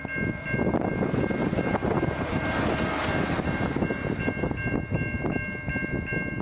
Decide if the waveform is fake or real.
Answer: real